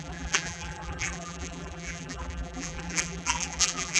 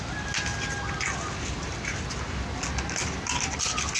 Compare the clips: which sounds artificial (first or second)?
first